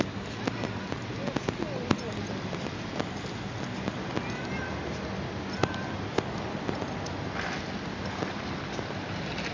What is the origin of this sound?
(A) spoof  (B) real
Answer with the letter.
B